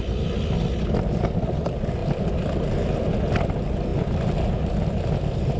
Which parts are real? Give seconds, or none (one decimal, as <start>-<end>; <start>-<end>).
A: 0.0-5.6